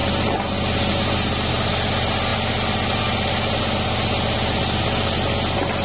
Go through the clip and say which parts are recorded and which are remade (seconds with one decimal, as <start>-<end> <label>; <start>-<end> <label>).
0.0-5.8 recorded